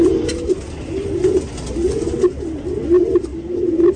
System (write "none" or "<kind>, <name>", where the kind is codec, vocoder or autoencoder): none